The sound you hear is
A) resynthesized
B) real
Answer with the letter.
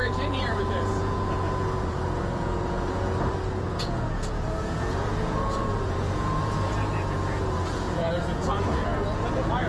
A